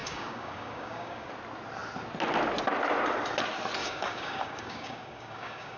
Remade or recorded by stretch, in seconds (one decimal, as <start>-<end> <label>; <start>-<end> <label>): 0.0-1.3 remade; 1.3-3.8 recorded; 3.8-5.8 remade